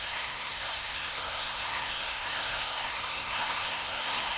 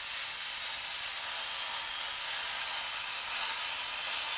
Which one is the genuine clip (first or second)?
second